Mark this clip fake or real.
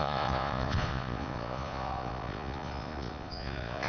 fake